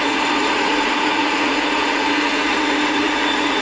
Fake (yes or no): yes